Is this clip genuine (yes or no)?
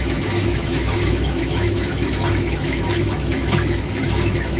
no